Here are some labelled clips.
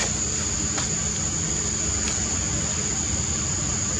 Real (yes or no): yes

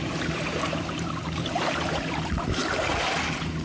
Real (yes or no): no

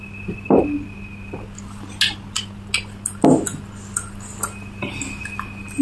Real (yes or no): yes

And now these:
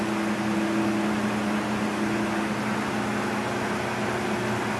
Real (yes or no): yes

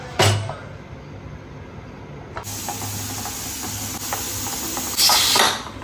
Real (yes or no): yes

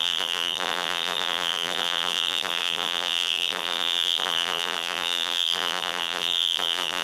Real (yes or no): no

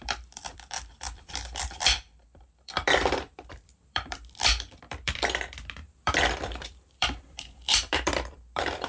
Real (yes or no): no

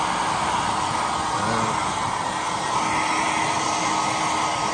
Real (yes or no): yes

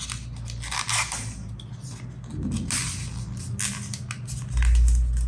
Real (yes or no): yes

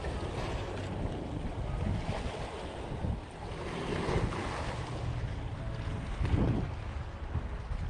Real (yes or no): yes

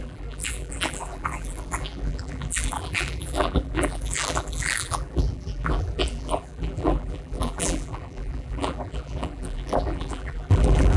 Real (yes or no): no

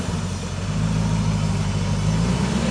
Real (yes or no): yes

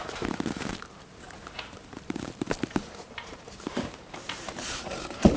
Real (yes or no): no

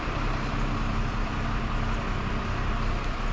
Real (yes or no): no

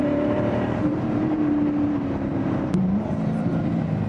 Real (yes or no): no